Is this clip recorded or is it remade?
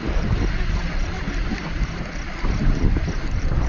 recorded